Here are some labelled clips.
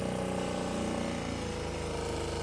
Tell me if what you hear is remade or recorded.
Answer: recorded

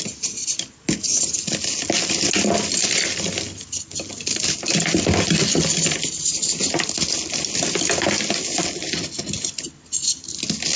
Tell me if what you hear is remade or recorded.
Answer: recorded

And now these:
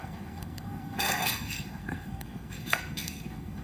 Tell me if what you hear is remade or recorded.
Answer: remade